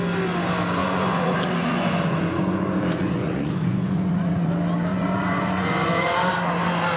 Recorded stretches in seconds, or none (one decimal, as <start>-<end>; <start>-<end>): 0.0-0.8; 4.5-4.9; 6.3-7.0